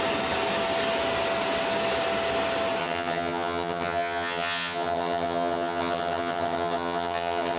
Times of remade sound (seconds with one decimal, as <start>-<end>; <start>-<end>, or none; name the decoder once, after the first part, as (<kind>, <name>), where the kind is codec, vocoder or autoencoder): 2.8-7.6 (vocoder, HiFi-GAN)

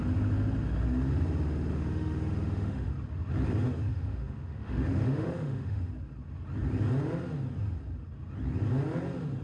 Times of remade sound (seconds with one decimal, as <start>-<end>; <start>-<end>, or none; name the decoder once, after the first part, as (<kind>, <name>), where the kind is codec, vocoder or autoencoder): 1.7-2.9 (autoencoder, DAC-VAE); 3.9-5.8

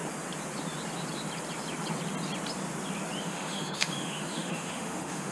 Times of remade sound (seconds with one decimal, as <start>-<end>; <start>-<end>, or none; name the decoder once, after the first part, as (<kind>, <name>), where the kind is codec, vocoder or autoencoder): 3.2-5.3 (autoencoder, DAC-VAE)

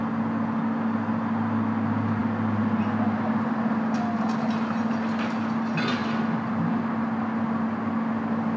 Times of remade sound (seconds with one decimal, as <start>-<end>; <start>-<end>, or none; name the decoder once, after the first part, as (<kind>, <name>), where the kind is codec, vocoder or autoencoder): none

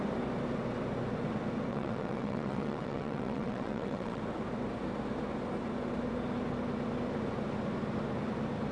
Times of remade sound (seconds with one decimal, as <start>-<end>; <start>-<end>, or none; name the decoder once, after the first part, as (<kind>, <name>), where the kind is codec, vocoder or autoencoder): 1.7-4.2 (vocoder, WaveNeXt)